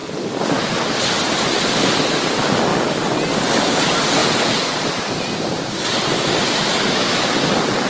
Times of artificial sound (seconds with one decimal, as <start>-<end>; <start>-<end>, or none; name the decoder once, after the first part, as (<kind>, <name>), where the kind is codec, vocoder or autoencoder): none